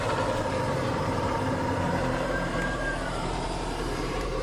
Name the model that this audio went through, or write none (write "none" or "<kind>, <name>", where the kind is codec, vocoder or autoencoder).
vocoder, BigVGAN v2